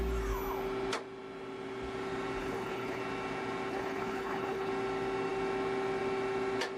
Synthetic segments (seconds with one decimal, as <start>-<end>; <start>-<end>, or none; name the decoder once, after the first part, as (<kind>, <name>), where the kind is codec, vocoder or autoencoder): 2.4-3.0 (codec, HILCodec); 3.7-4.7